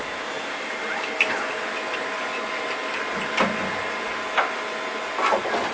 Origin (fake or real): real